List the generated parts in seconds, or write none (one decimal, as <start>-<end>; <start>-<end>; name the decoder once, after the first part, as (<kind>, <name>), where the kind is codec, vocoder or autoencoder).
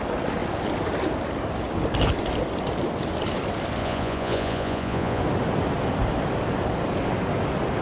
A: 3.8-5.2 (vocoder, Vocos)